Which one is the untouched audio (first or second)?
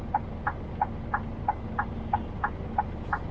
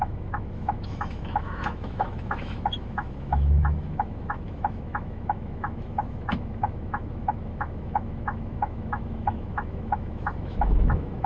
first